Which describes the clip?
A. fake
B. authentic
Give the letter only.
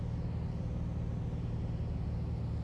B